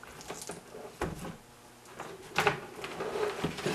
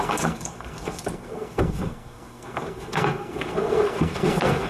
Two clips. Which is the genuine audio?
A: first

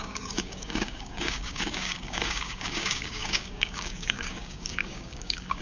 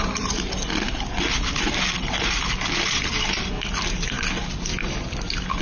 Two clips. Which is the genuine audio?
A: second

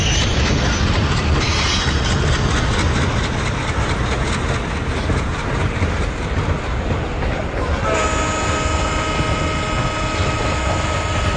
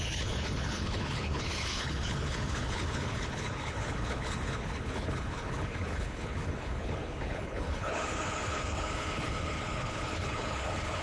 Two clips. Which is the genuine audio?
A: first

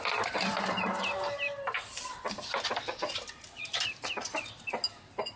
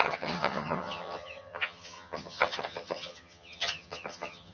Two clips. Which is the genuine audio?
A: first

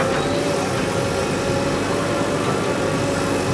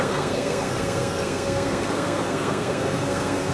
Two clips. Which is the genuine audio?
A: first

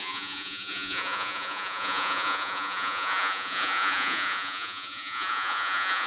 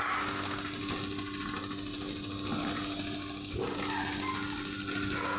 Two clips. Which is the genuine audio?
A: second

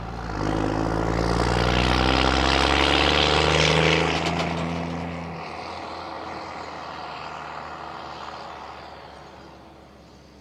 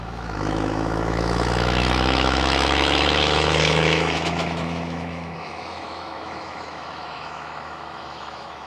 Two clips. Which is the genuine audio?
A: first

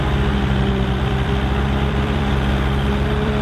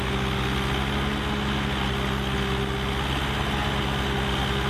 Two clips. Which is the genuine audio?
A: second